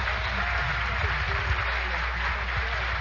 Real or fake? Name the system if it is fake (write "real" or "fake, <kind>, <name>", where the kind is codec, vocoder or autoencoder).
real